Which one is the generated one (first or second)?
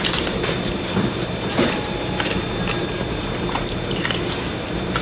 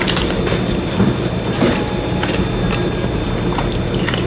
first